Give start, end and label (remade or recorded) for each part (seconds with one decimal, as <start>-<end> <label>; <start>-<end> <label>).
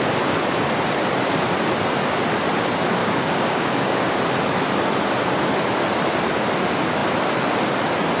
0.0-3.0 recorded; 3.0-4.2 remade; 4.2-8.2 recorded